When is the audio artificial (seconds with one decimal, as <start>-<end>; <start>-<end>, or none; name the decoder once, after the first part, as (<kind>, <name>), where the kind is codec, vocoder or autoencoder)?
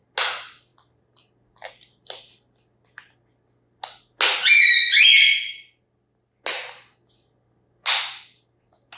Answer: none